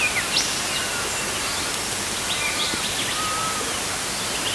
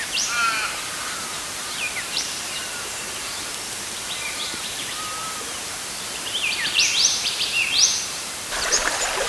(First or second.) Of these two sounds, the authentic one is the first